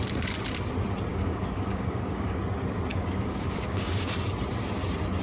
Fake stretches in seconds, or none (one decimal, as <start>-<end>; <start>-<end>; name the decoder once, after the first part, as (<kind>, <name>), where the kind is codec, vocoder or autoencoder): 1.1-2.4 (codec, DAC); 2.9-4.1